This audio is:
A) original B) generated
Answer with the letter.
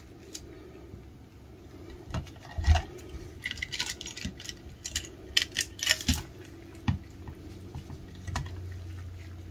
A